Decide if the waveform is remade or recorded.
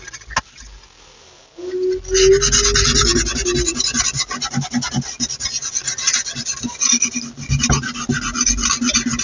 recorded